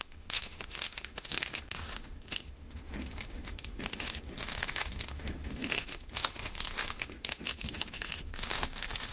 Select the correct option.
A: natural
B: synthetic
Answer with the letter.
B